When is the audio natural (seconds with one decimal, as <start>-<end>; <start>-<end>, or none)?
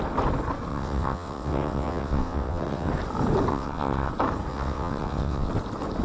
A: 0.0-0.7; 2.9-3.5; 4.1-4.5; 5.5-6.0